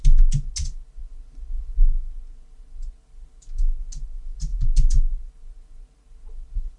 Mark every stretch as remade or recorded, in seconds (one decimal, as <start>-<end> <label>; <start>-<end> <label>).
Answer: 0.0-6.8 recorded